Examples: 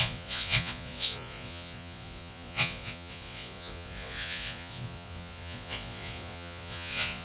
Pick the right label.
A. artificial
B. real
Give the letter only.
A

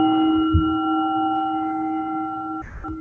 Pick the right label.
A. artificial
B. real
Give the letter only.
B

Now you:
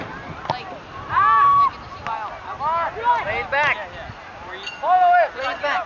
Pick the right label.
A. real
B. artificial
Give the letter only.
A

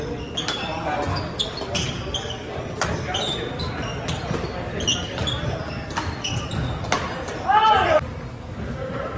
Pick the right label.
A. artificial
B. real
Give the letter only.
B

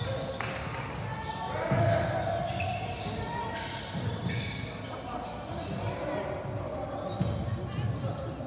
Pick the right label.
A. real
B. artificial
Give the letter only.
A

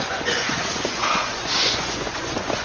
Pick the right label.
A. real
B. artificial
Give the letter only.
B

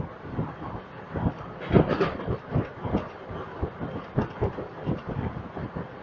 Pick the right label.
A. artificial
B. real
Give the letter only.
B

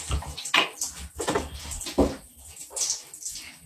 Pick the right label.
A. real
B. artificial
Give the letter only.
A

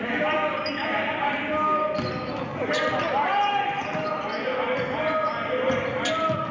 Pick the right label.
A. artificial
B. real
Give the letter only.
B